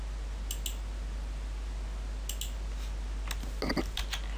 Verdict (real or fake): real